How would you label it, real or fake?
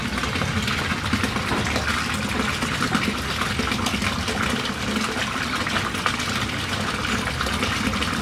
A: real